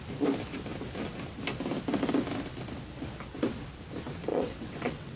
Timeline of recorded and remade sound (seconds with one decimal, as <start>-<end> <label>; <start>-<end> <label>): 0.0-4.3 recorded; 4.3-5.2 remade